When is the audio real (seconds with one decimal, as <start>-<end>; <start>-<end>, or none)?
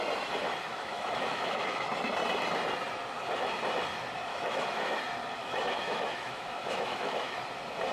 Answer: 0.0-0.7; 1.9-4.3; 5.0-5.4; 7.4-7.9